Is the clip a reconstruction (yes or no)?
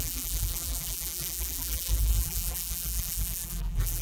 yes